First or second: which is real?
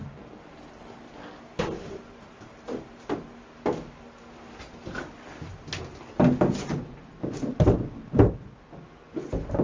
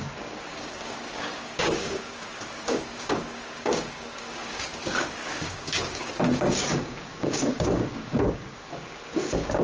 first